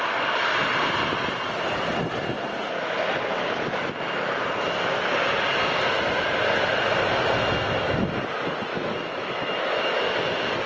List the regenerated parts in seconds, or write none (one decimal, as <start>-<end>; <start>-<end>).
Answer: 8.7-10.0